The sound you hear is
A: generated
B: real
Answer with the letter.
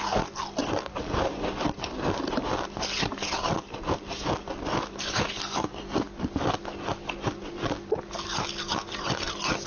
B